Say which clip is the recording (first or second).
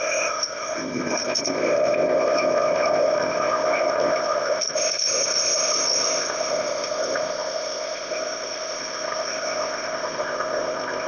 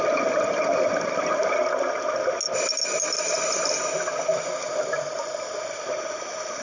second